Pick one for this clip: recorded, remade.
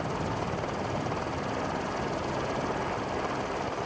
recorded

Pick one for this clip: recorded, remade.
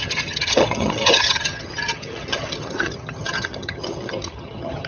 remade